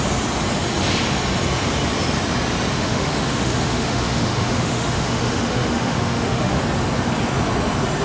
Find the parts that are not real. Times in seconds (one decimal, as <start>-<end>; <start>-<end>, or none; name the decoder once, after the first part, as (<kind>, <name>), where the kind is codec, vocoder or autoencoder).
2.7-6.6 (autoencoder, DAC-VAE)